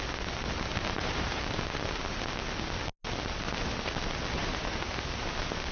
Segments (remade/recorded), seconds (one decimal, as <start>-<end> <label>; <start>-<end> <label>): 0.0-0.7 recorded; 0.7-2.0 remade; 2.0-4.4 recorded; 4.4-5.0 remade; 5.0-5.7 recorded